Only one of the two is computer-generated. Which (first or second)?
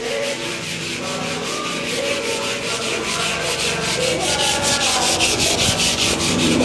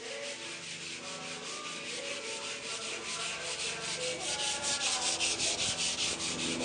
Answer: first